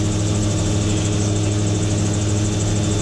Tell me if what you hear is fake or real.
real